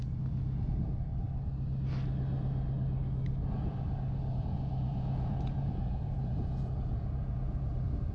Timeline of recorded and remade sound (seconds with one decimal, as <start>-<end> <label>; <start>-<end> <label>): 0.0-1.1 remade; 1.1-4.3 recorded; 4.3-8.1 remade